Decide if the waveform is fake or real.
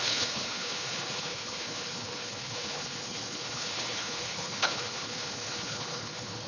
fake